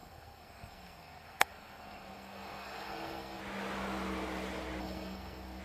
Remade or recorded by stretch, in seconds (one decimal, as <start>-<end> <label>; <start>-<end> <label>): 0.0-3.4 remade; 3.4-4.8 recorded; 4.8-5.6 remade